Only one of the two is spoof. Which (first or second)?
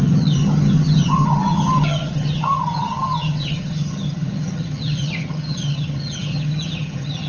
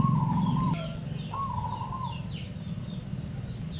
first